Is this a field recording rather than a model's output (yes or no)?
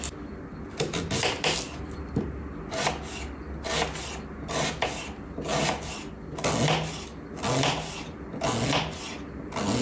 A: yes